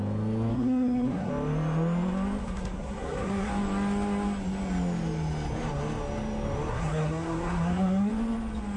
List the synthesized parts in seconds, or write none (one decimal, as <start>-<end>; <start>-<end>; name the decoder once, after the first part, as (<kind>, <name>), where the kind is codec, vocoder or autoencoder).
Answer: 0.5-1.3 (codec, SNAC); 2.4-3.5; 6.7-8.1